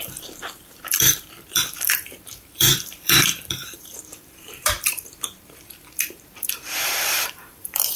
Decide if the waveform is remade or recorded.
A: remade